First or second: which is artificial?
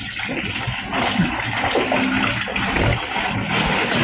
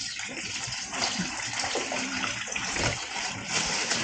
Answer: second